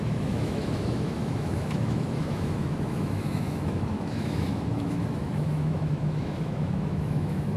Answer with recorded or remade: remade